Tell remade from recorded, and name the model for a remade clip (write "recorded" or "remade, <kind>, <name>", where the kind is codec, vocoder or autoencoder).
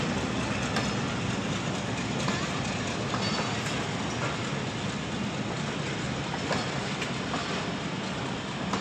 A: recorded